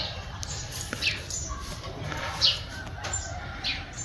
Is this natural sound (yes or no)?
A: yes